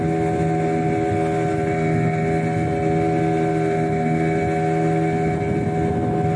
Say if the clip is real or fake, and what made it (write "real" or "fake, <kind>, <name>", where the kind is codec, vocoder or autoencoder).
real